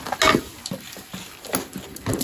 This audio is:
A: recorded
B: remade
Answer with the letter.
A